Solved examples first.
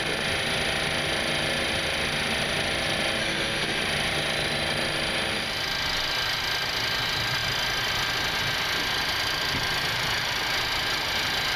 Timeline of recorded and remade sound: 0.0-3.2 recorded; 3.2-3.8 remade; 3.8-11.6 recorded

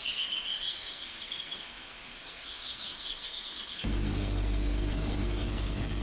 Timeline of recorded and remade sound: 0.0-6.0 remade

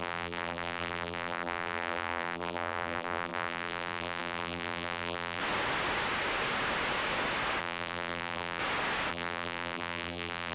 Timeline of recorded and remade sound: 0.0-5.4 remade; 5.4-7.6 recorded; 7.6-8.6 remade; 8.6-9.1 recorded; 9.1-10.5 remade

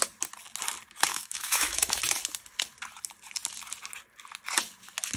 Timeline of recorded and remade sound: 0.0-1.1 recorded; 1.1-2.0 remade; 2.0-5.2 recorded